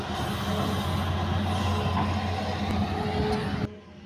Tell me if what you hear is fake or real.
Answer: real